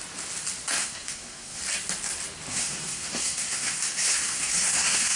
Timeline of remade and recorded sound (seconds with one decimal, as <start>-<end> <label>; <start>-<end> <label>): 0.0-0.8 recorded; 0.8-1.6 remade; 1.6-2.5 recorded; 2.5-5.2 remade